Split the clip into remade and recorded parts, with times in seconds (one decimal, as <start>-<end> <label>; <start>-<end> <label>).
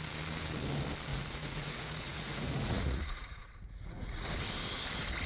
0.0-1.1 recorded; 1.1-4.3 remade; 4.3-5.3 recorded